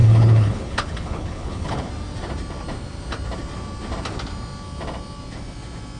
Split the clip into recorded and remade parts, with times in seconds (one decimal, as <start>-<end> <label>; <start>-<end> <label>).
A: 0.0-1.9 remade; 1.9-6.0 recorded

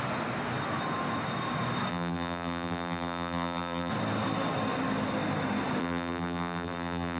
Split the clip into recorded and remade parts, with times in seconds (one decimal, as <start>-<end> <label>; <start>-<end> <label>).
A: 0.0-1.9 recorded; 1.9-3.9 remade; 3.9-5.8 recorded; 5.8-7.2 remade

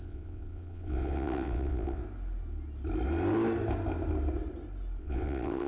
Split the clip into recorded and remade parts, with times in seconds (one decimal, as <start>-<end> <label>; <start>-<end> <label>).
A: 0.0-2.0 remade; 2.0-5.0 recorded; 5.0-5.7 remade